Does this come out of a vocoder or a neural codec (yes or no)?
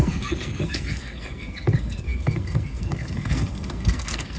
yes